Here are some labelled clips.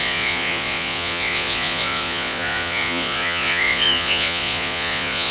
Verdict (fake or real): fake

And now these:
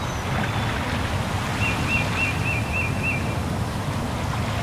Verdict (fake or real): real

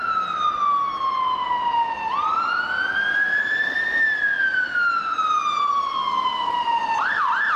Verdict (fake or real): real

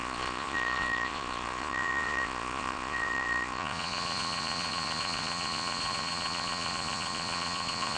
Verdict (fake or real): fake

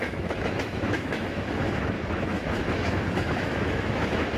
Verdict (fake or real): fake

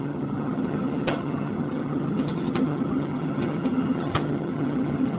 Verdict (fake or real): fake